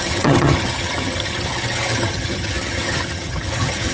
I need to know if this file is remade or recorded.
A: remade